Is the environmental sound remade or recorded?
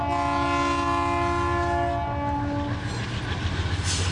recorded